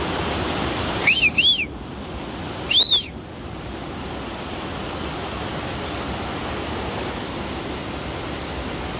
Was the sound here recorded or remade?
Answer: recorded